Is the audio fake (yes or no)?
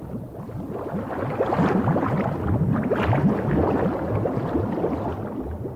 no